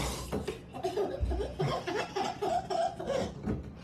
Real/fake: real